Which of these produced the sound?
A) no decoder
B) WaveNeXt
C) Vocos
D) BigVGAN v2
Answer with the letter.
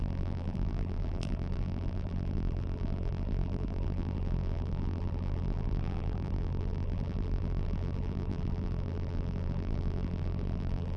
D